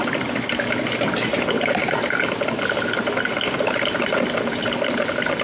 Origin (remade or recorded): recorded